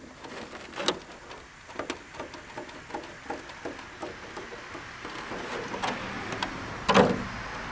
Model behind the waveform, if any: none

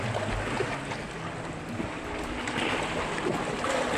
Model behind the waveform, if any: none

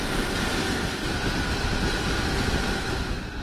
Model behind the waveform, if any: none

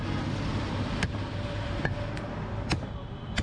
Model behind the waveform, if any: none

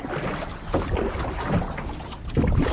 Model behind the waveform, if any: none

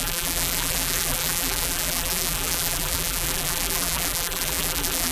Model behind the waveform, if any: vocoder, BigVGAN v2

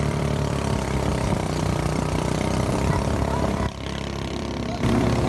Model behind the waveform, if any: vocoder, BigVGAN v2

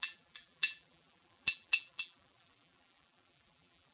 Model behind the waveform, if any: vocoder, BigVGAN v2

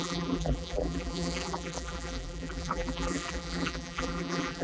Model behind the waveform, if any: vocoder, BigVGAN v2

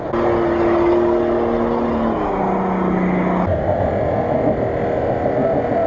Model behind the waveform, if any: none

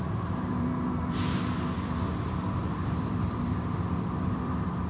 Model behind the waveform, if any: vocoder, BigVGAN v2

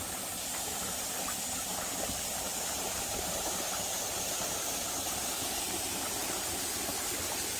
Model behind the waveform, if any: none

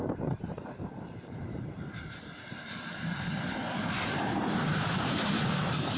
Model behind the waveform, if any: vocoder, BigVGAN v2